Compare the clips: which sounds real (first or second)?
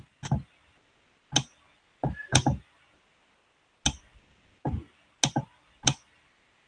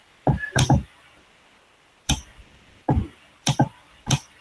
first